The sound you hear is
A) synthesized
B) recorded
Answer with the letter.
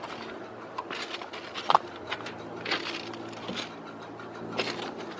B